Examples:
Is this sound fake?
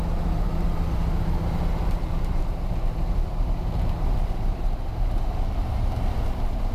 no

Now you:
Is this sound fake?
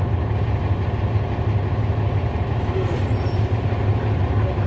no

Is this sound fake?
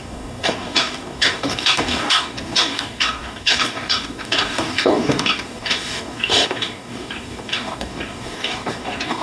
yes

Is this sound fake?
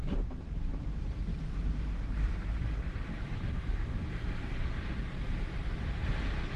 yes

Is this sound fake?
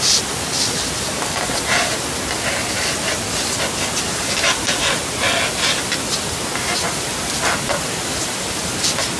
no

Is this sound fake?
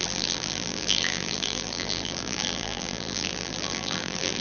yes